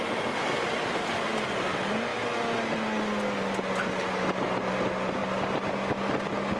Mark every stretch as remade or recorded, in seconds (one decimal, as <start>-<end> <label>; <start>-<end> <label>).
0.0-6.6 recorded